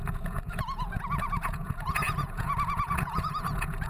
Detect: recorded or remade remade